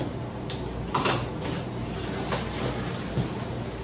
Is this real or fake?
real